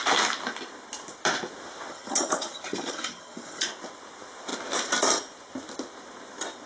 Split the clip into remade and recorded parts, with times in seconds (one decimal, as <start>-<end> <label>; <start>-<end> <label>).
0.0-1.9 recorded; 1.9-3.6 remade; 3.6-6.7 recorded